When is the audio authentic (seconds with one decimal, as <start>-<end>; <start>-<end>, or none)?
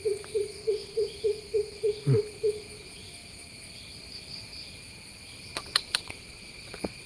0.0-0.6; 1.1-5.5